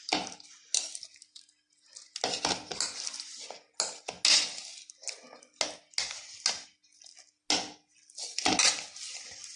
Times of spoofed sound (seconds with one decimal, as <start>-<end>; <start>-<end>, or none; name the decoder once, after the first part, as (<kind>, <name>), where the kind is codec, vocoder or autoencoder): none

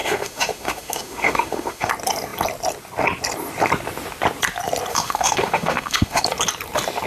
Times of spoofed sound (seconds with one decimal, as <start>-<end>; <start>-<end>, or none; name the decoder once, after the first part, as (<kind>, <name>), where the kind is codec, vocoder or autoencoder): 0.0-1.9 (autoencoder, DAC-VAE); 4.9-6.2

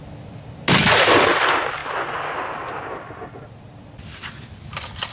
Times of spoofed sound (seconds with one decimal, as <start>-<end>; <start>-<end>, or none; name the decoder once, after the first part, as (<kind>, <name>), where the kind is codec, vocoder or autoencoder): none

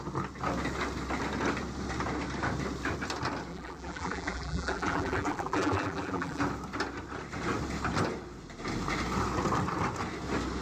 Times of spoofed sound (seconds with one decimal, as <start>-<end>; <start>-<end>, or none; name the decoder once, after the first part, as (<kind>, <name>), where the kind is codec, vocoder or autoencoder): 3.5-6.4 (vocoder, BigVGAN v2)

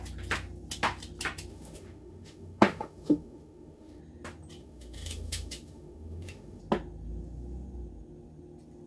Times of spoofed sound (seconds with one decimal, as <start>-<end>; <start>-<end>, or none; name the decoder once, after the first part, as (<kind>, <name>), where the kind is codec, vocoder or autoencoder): 1.5-4.0 (autoencoder, DAC-VAE); 4.6-6.6

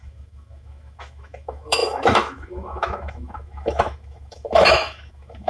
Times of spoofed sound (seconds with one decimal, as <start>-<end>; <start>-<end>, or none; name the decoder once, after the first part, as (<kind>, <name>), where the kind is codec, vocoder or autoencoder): 0.0-5.5 (autoencoder, DAC-VAE)

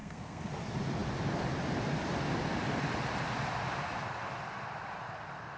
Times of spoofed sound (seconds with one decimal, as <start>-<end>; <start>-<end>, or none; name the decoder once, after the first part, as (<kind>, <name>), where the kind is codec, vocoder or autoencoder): 0.0-0.5 (codec, SNAC)

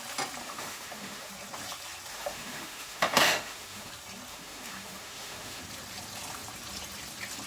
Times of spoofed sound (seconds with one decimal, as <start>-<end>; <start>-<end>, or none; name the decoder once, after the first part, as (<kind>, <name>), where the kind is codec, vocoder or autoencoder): 0.4-1.3 (autoencoder, DAC-VAE); 2.1-3.9; 4.3-5.6